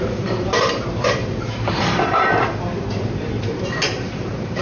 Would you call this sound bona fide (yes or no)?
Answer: no